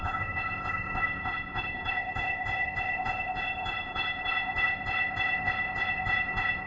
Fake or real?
fake